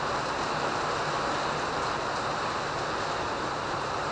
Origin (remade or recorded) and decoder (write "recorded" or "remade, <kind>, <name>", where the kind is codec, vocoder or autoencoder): recorded